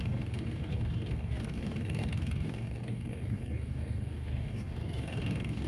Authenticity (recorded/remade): remade